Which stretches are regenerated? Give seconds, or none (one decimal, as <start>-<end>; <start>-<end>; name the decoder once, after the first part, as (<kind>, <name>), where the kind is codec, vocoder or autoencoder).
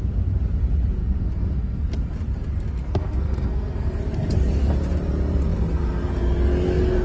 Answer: 1.0-1.9 (codec, SNAC); 2.8-4.0